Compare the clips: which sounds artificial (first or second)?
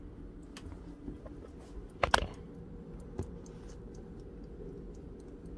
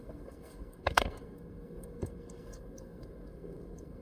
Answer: second